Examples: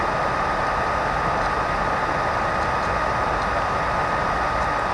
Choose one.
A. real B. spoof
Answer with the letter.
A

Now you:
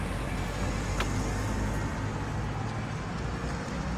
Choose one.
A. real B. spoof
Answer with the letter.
A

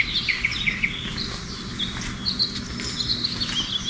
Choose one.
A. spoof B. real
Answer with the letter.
B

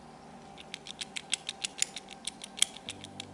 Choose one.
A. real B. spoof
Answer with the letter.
A